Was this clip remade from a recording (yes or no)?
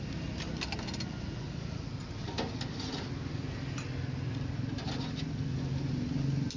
no